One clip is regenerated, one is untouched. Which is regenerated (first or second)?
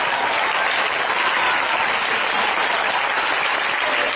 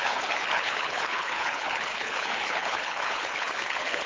second